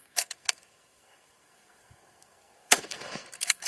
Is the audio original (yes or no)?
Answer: no